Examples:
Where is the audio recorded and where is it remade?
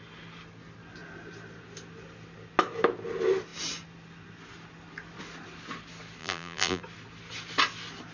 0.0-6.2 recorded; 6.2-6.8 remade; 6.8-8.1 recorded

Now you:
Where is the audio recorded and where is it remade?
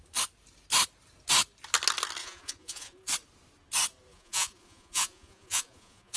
0.0-2.2 recorded; 2.2-3.1 remade; 3.1-4.1 recorded; 4.1-6.2 remade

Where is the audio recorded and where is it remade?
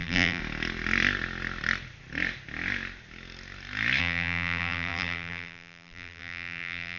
0.0-0.4 remade; 0.4-4.0 recorded; 4.0-7.0 remade